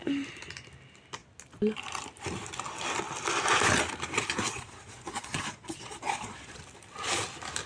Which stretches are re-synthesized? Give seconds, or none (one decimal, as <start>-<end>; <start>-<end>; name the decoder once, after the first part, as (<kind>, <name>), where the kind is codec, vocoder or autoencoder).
4.5-6.6 (vocoder, Vocos)